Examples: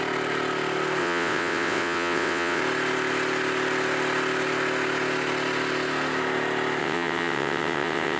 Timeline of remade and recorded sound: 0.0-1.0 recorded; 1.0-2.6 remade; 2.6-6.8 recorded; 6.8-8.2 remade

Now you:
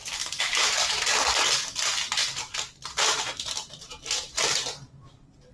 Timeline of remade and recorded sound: 0.0-5.5 recorded

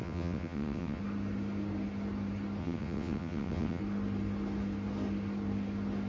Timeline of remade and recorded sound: 0.0-1.0 remade; 1.0-2.6 recorded; 2.6-3.8 remade; 3.8-6.1 recorded

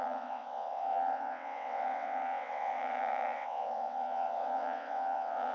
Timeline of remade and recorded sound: 0.0-5.5 remade

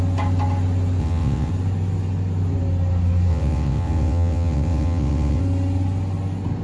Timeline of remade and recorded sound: 0.0-1.0 recorded; 1.0-1.5 remade; 1.5-3.3 recorded; 3.3-5.4 remade; 5.4-6.6 recorded

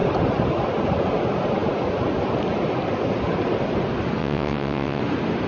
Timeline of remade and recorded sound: 0.0-4.2 recorded; 4.2-5.0 remade; 5.0-5.5 recorded

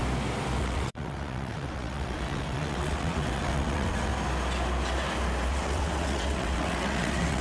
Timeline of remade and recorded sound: 0.0-0.6 recorded; 0.6-4.1 remade; 4.1-5.5 recorded; 5.5-7.4 remade

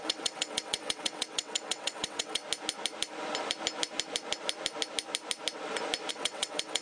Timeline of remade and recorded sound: 0.0-2.4 remade; 2.4-6.1 recorded; 6.1-6.8 remade